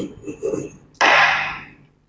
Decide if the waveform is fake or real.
real